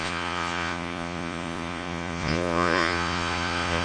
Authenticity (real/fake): fake